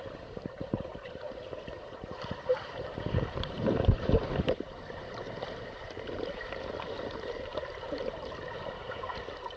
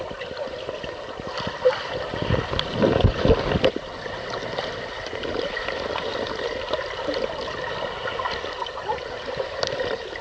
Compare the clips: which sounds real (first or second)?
second